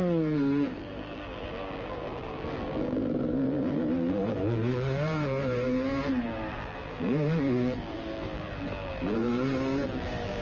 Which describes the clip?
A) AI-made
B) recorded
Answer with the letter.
A